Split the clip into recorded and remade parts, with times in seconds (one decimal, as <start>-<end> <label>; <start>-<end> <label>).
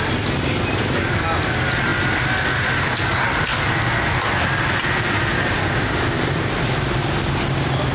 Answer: 0.0-7.9 recorded